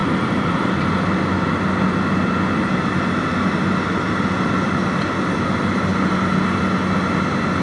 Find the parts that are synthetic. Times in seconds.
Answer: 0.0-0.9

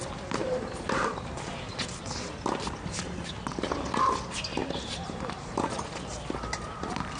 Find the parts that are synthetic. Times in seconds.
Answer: 0.4-1.2; 4.6-5.5

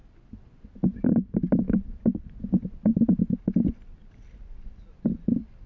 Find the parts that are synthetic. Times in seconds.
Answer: none

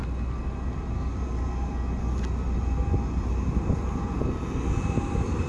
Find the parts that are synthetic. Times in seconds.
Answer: 3.3-5.5